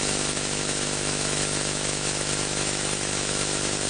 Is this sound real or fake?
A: fake